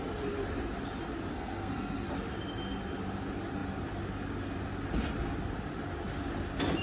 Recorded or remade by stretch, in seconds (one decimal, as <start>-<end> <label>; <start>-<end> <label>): 0.0-1.3 recorded; 1.3-2.1 remade; 2.1-6.8 recorded

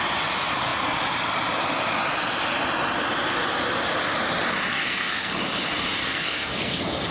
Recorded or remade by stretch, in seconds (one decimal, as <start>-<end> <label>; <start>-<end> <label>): 0.0-4.7 recorded; 4.7-5.4 remade; 5.4-6.0 recorded; 6.0-7.1 remade

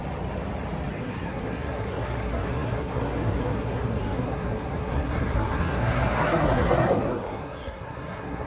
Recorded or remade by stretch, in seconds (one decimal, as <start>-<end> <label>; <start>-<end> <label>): 0.0-1.0 recorded; 1.0-8.5 remade

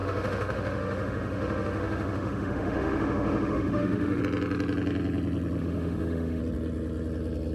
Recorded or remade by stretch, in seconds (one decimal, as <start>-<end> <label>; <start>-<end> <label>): 0.0-4.2 remade; 4.2-5.6 recorded; 5.6-6.4 remade; 6.4-7.5 recorded

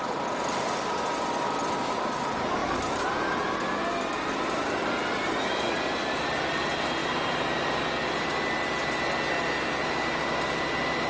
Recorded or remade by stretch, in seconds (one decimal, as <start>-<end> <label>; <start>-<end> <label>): 0.0-1.6 recorded; 1.6-2.2 remade; 2.2-2.6 recorded; 2.6-3.1 remade; 3.1-7.0 recorded; 7.0-7.6 remade; 7.6-11.1 recorded

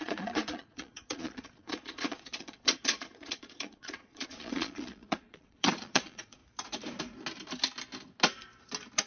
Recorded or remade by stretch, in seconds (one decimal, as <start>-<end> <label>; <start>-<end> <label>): 0.0-6.4 remade; 6.4-9.1 recorded